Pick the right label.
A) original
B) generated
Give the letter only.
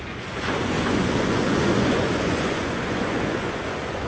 B